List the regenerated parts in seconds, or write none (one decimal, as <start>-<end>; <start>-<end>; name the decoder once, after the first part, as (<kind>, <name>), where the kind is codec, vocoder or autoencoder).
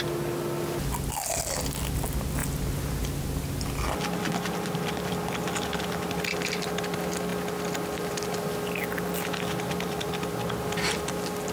none